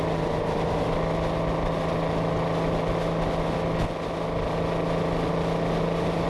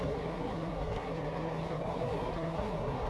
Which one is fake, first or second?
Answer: second